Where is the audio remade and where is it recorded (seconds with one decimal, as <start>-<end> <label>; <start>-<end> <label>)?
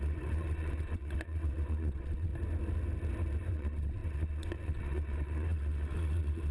0.0-2.3 remade; 2.3-3.5 recorded; 3.5-6.5 remade